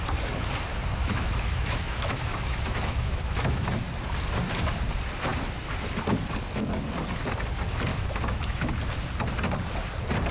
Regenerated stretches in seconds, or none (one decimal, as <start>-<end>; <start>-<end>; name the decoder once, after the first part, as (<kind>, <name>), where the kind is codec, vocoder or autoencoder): 1.0-3.7 (autoencoder, DAC-VAE); 7.9-8.7